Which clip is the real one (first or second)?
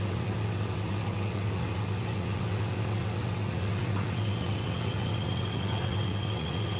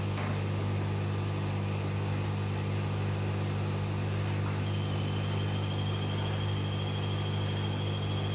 second